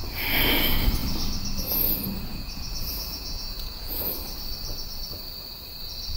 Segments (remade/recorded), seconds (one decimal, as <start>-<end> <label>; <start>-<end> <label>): 0.0-2.3 recorded; 2.3-4.1 remade; 4.1-6.2 recorded